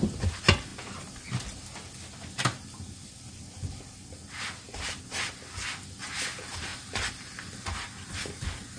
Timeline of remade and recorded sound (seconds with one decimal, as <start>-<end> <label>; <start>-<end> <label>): 0.0-8.8 recorded